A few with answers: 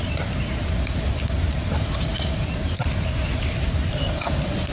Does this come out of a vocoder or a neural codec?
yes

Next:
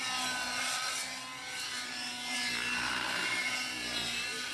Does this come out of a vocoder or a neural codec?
no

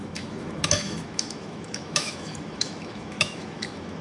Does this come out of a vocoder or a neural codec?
yes